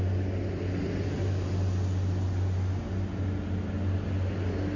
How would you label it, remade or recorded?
recorded